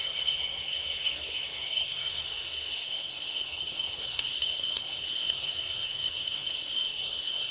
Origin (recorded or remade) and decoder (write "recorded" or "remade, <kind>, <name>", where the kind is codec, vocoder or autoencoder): remade, codec, SNAC